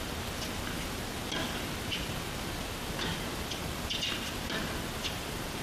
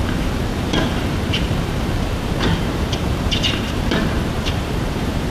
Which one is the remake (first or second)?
second